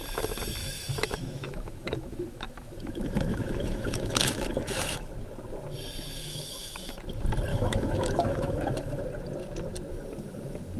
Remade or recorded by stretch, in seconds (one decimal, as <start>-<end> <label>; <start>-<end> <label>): 0.0-0.6 recorded; 0.6-5.1 remade; 5.1-6.2 recorded; 6.2-6.9 remade; 6.9-7.5 recorded; 7.5-9.0 remade; 9.0-10.8 recorded